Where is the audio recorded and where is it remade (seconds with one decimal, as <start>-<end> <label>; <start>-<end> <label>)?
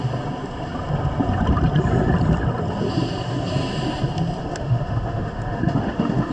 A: 0.0-4.4 recorded; 4.4-6.3 remade